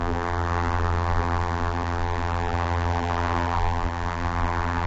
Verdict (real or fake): fake